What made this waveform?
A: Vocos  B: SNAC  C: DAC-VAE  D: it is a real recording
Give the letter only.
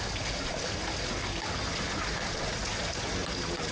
D